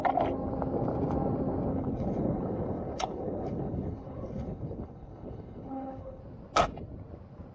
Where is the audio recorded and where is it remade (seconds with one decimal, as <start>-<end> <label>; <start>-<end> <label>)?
0.0-1.7 recorded; 1.7-6.2 remade; 6.2-7.5 recorded